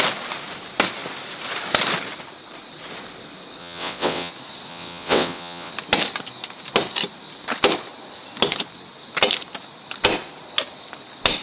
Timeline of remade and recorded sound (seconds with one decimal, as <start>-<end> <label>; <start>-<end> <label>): 0.0-3.6 recorded; 3.6-4.3 remade; 4.3-4.7 recorded; 4.7-5.7 remade; 5.7-11.4 recorded